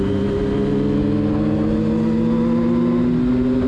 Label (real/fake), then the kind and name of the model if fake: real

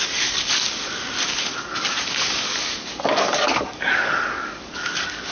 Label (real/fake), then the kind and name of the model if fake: fake, codec, DAC